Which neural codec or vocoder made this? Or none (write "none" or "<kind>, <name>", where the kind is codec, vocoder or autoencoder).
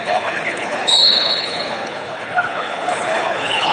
codec, HILCodec